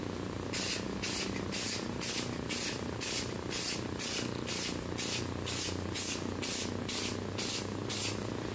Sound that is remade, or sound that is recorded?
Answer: recorded